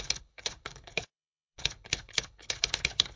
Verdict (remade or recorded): remade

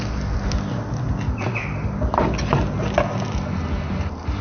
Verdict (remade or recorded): recorded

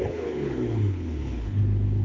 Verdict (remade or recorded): remade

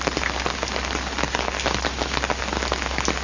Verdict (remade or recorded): recorded